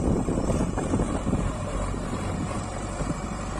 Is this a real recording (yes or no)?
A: no